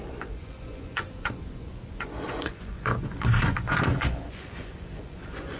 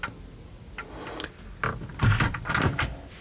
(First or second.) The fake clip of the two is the first